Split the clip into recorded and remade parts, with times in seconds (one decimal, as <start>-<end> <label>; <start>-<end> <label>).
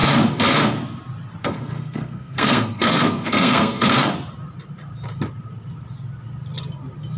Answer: 0.0-1.4 recorded; 1.4-4.1 remade; 4.1-7.2 recorded